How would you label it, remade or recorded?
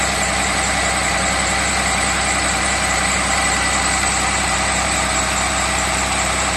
remade